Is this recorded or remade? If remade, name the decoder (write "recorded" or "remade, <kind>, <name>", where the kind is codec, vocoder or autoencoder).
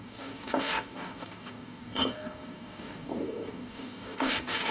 remade, codec, DAC